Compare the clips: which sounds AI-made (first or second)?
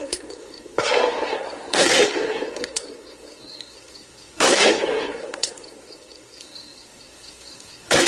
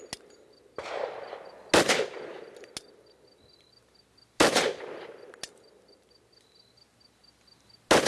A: first